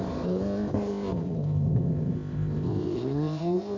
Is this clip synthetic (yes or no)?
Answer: yes